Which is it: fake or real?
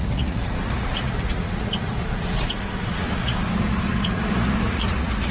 fake